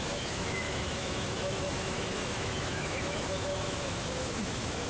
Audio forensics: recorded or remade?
remade